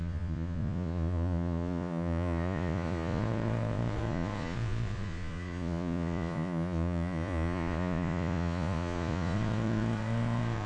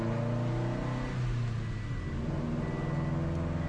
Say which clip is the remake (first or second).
first